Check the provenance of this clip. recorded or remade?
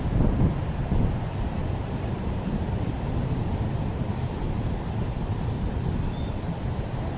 recorded